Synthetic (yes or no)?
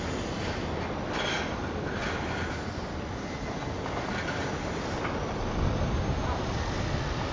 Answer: no